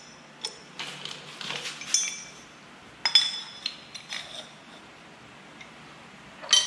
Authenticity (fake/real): real